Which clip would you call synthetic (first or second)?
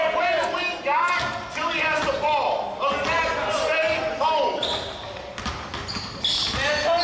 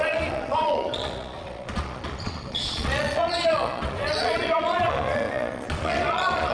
second